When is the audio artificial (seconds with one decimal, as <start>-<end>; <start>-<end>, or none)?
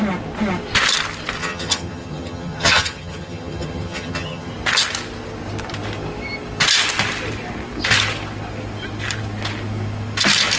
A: 1.4-4.5